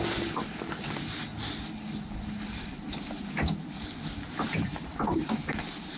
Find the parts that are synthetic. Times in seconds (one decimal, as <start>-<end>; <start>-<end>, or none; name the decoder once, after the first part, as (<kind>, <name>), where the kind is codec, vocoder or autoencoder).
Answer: none